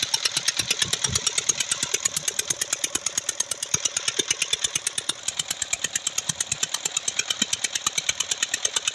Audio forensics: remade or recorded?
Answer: recorded